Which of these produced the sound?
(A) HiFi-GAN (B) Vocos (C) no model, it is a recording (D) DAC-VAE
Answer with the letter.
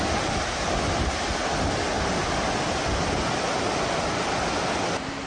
C